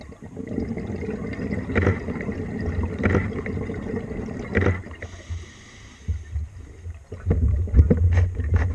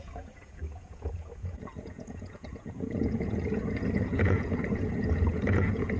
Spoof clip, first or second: second